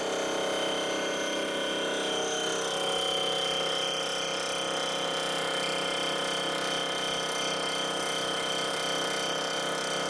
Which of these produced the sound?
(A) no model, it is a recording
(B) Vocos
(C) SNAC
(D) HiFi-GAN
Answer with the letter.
A